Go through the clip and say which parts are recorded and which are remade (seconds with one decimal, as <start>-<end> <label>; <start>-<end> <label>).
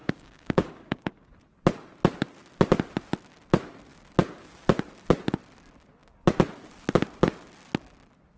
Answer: 0.0-1.3 remade; 1.3-8.4 recorded